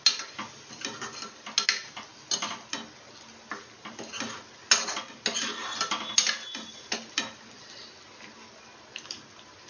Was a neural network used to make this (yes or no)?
no